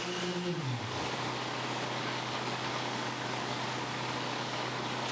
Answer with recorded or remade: remade